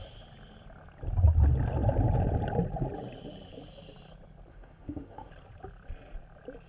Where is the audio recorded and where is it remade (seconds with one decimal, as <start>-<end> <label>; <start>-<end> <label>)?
0.0-4.5 recorded; 4.5-5.3 remade; 5.3-6.7 recorded